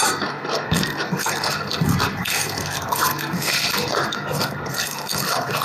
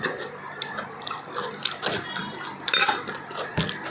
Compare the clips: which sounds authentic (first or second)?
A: second